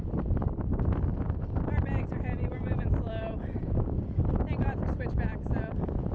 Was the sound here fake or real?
fake